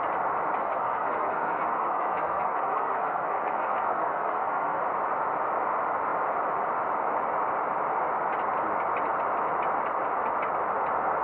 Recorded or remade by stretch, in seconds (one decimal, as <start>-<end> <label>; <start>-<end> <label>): 0.0-0.6 recorded; 0.6-4.8 remade; 4.8-11.2 recorded